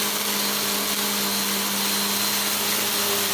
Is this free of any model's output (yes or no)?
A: yes